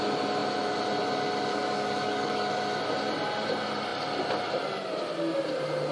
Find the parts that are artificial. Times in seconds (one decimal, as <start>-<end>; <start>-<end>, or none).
1.5-2.5